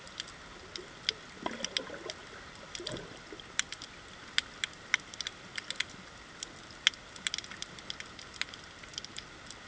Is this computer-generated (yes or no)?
no